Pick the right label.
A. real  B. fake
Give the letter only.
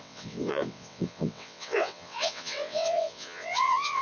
B